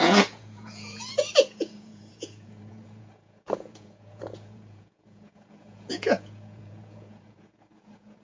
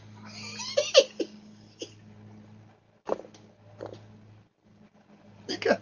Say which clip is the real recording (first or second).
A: second